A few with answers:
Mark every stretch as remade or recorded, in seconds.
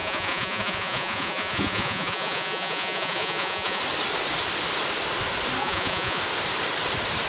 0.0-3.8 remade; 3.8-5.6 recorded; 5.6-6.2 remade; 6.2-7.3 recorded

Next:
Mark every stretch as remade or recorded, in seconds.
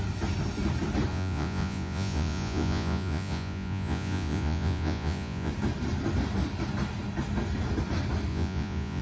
0.0-1.1 recorded; 1.1-5.5 remade; 5.5-8.3 recorded; 8.3-9.0 remade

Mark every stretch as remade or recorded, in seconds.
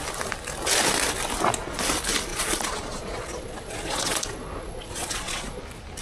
0.0-2.3 recorded; 2.3-5.6 remade; 5.6-6.0 recorded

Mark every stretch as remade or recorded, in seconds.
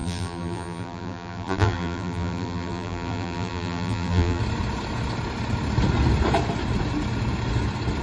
0.0-4.4 remade; 4.4-8.0 recorded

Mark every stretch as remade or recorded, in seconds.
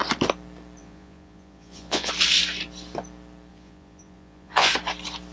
0.0-0.8 recorded; 0.8-2.1 remade; 2.1-3.5 recorded; 3.5-4.7 remade; 4.7-5.3 recorded